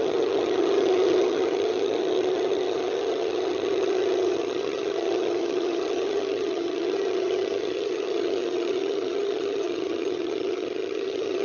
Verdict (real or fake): fake